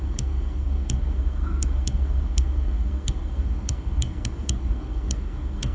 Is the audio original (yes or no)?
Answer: no